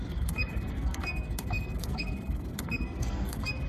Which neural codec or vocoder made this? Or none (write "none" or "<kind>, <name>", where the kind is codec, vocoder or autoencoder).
codec, SNAC